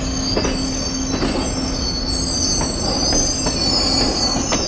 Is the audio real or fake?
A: real